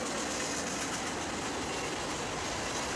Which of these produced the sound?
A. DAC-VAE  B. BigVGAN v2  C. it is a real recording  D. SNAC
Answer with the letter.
C